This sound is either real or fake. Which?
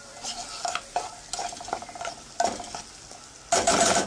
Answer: real